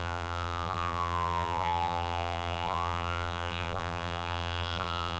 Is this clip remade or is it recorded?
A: remade